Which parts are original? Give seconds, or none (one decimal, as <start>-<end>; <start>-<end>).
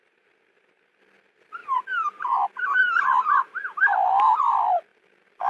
0.0-1.6; 4.4-4.9